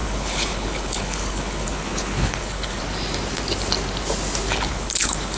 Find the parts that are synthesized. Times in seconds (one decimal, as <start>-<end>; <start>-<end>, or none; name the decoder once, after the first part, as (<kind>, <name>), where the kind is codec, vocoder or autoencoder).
0.0-2.8 (codec, HILCodec); 4.7-5.4